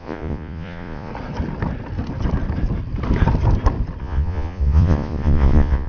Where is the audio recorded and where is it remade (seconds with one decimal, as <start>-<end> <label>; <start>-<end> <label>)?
0.0-1.1 remade; 1.1-4.0 recorded; 4.0-5.9 remade